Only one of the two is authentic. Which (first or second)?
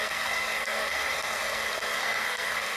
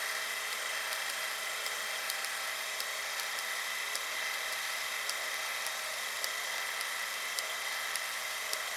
second